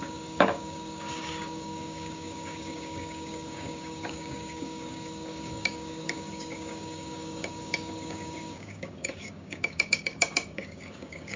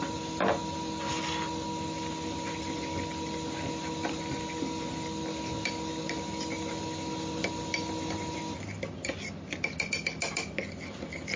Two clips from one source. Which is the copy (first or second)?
first